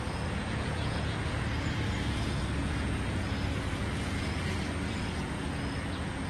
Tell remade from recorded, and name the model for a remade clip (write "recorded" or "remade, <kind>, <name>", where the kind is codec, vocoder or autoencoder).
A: remade, vocoder, Vocos